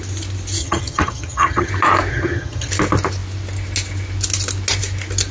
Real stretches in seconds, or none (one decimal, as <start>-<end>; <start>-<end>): 0.0-0.6; 1.7-2.1; 2.7-5.3